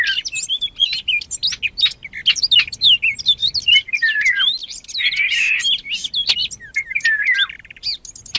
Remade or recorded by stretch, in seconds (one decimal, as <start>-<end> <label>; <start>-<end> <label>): 0.0-8.4 recorded